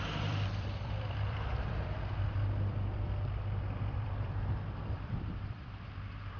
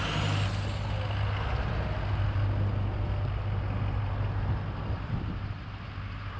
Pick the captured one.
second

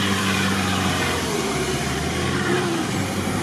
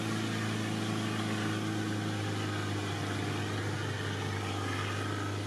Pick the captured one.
second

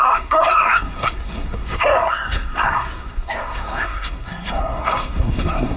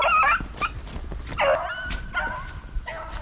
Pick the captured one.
second